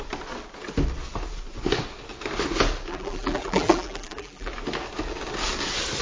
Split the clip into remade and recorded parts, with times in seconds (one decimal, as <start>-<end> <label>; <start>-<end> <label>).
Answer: 0.0-2.9 recorded; 2.9-4.5 remade; 4.5-6.0 recorded